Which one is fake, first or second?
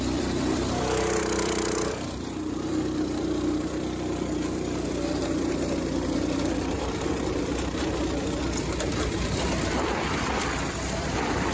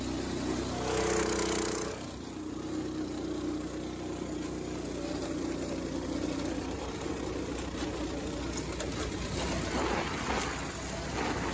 first